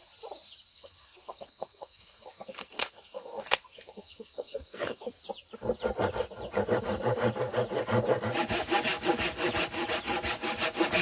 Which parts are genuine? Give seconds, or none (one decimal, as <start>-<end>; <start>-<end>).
0.0-0.7; 5.2-11.0